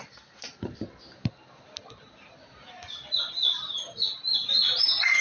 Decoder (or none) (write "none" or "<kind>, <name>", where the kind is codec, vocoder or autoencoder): none